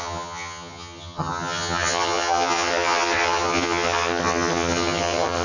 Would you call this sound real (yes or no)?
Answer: no